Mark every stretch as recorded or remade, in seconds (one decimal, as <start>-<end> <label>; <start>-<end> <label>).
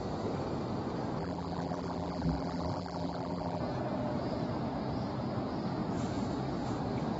0.0-1.2 recorded; 1.2-3.6 remade; 3.6-7.2 recorded